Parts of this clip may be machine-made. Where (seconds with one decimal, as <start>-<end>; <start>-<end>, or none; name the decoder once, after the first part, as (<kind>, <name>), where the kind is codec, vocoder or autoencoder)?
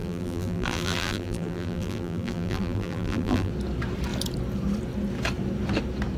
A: 0.0-3.5 (vocoder, BigVGAN v2)